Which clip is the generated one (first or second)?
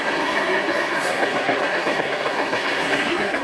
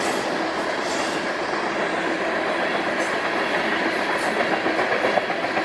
first